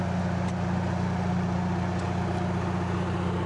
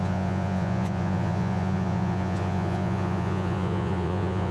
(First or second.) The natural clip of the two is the first